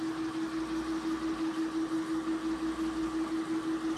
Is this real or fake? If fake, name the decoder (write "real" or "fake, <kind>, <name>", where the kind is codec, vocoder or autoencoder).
real